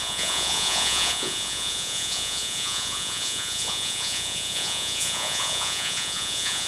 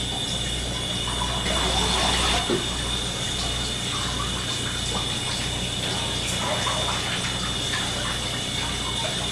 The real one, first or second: second